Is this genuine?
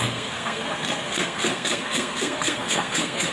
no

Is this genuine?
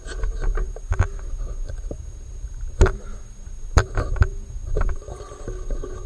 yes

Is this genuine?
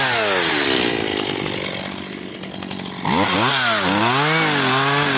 yes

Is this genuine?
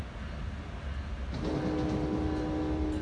yes